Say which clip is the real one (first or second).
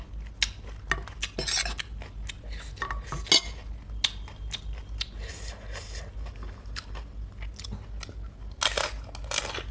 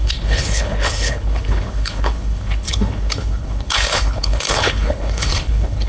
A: first